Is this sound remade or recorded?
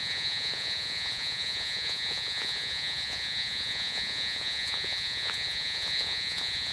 remade